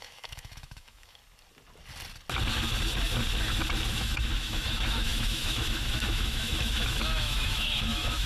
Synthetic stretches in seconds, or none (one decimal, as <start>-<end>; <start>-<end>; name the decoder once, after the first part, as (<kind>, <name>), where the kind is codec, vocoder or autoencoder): 0.0-1.2 (autoencoder, DAC-VAE); 3.9-8.3